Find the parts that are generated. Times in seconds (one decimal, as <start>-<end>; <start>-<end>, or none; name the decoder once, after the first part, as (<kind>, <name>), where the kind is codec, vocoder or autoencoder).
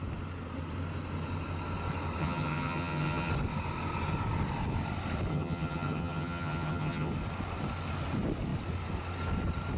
2.2-3.3 (vocoder, HiFi-GAN); 5.3-7.1